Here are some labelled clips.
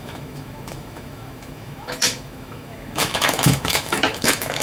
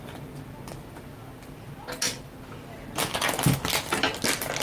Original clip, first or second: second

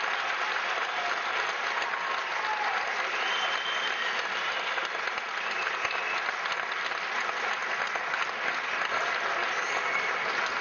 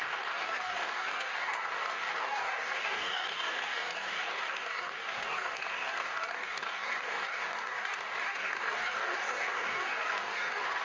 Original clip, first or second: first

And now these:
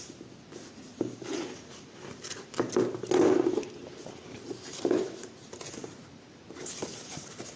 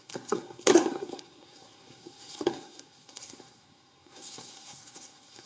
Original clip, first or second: first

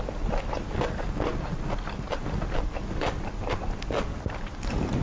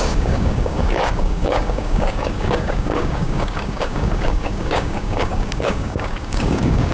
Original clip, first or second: first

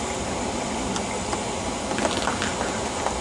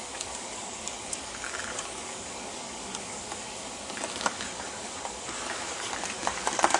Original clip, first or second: first